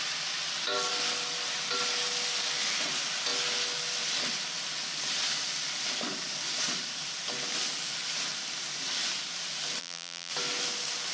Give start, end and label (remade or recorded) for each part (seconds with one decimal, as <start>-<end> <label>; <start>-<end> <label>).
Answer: 0.0-9.8 recorded; 9.8-10.3 remade; 10.3-11.1 recorded